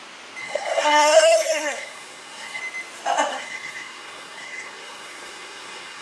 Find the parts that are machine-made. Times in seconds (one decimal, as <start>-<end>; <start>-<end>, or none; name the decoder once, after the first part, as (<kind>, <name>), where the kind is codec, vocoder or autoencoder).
0.4-2.6 (codec, SNAC); 3.3-6.0

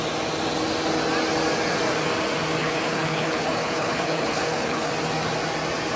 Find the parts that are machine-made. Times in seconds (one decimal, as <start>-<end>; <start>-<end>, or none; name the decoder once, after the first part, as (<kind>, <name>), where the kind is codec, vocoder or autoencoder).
2.6-4.9 (codec, HILCodec)

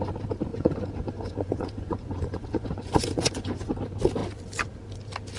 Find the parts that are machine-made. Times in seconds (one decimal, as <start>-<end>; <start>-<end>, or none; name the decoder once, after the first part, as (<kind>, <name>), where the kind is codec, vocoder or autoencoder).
0.5-3.7 (vocoder, Vocos)

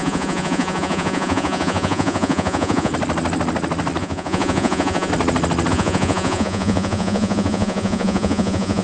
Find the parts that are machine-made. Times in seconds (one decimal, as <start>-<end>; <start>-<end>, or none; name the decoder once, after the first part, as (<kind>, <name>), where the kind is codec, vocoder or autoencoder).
0.0-2.9 (vocoder, Vocos); 4.0-5.1; 5.7-8.8

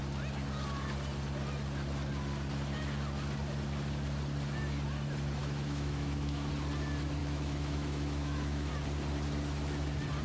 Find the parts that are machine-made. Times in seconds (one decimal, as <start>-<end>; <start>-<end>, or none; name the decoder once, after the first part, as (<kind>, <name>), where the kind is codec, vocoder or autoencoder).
5.4-6.5 (autoencoder, DAC-VAE); 7.2-8.7

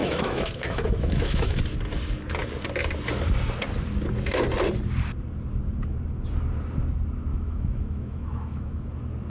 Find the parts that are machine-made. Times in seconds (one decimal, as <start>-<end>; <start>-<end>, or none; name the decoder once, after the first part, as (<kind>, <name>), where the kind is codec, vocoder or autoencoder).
0.0-1.6 (autoencoder, DAC-VAE); 7.3-8.9